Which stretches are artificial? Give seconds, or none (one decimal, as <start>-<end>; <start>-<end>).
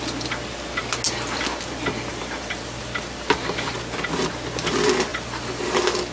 2.1-2.8; 5.1-5.6